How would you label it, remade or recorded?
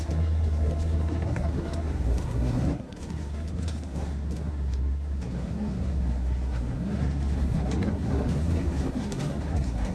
remade